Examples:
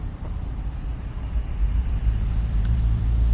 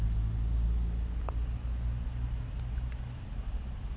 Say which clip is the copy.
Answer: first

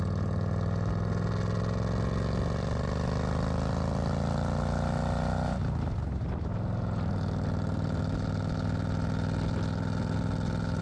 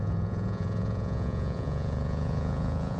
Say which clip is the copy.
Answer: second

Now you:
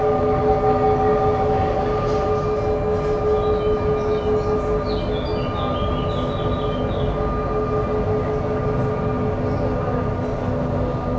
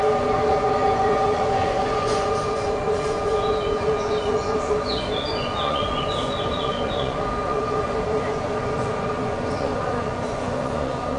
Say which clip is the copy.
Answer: second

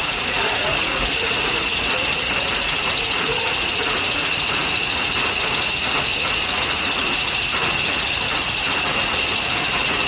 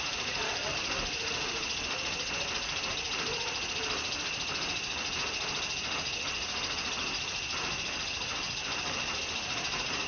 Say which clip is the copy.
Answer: first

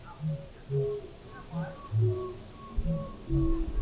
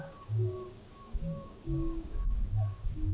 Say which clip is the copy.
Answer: second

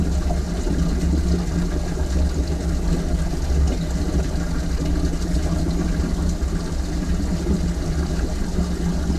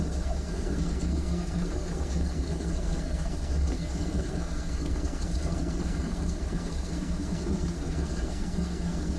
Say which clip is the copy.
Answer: second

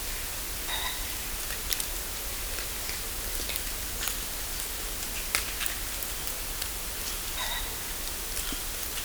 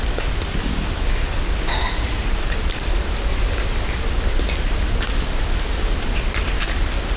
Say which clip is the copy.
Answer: second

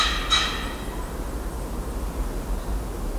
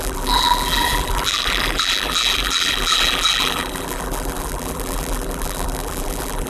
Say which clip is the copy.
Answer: second